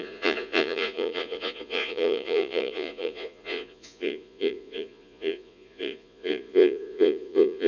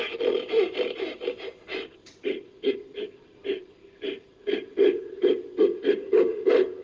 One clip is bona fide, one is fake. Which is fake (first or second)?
first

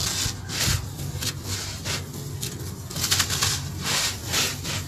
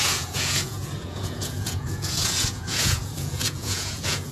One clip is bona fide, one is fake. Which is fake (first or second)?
second